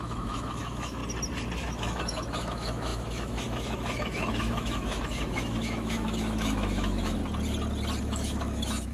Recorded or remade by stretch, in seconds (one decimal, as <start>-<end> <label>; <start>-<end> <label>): 0.0-1.0 remade; 1.0-1.7 recorded; 1.7-7.2 remade; 7.2-8.0 recorded; 8.0-8.9 remade